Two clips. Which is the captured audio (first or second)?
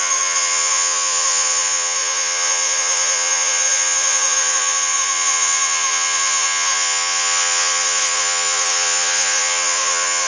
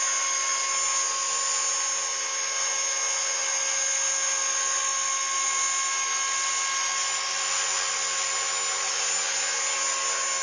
second